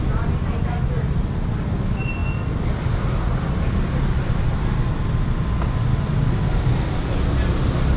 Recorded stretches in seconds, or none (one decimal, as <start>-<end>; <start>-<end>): 0.0-8.0